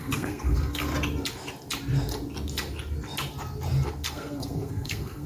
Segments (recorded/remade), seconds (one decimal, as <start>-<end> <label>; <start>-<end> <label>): 0.0-0.9 remade; 0.9-4.1 recorded; 4.1-5.3 remade